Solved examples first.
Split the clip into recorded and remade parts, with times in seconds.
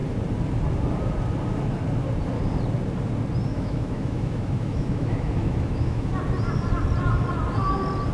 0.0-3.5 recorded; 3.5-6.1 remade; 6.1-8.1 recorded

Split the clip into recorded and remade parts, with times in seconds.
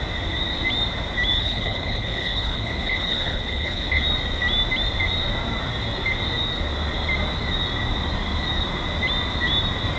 0.0-1.3 recorded; 1.3-4.0 remade; 4.0-10.0 recorded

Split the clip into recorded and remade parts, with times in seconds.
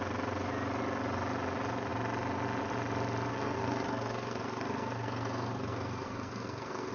0.0-3.3 recorded; 3.3-6.9 remade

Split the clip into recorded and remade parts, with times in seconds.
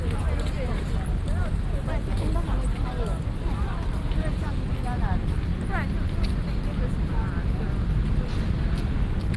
0.0-9.4 recorded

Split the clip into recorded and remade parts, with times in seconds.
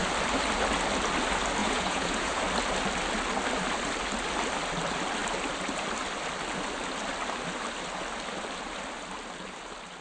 0.0-1.6 recorded; 1.6-2.4 remade; 2.4-10.0 recorded